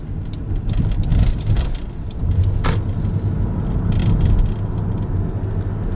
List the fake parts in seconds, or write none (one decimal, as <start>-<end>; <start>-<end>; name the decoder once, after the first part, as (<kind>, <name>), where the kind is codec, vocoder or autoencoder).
1.1-2.4 (vocoder, BigVGAN v2)